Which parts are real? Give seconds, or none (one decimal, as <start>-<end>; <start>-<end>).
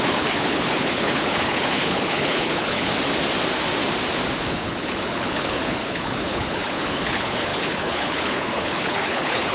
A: 2.9-4.5